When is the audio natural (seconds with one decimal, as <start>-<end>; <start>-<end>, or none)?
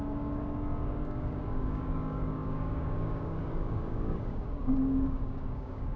none